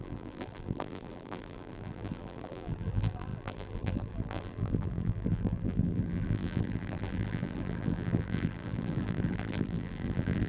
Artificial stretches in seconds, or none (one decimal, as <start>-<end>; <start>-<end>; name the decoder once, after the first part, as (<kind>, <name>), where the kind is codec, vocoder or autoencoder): 0.0-10.5 (vocoder, BigVGAN v2)